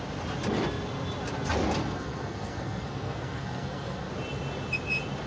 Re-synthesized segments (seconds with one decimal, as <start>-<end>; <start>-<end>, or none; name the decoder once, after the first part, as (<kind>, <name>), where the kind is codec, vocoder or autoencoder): 1.8-4.1 (codec, SNAC)